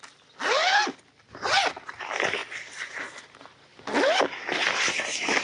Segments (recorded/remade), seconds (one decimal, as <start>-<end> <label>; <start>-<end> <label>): 0.0-5.4 recorded